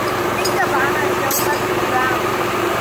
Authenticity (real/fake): fake